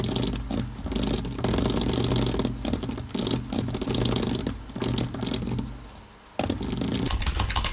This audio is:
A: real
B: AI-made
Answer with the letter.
A